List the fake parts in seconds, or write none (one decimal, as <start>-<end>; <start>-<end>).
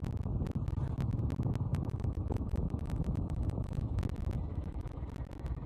1.7-4.0; 4.5-5.0